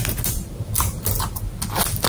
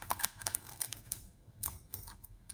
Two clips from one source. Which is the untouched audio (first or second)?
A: first